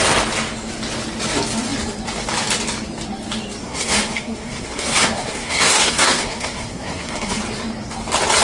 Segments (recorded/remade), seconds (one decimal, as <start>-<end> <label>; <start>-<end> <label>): 0.0-3.6 recorded; 3.6-7.4 remade; 7.4-8.4 recorded